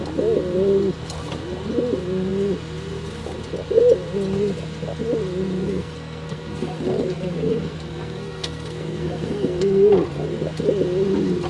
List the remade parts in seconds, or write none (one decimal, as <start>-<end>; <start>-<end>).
5.6-9.9